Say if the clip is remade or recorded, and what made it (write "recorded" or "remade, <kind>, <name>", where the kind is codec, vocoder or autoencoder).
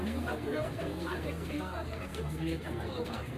remade, codec, SNAC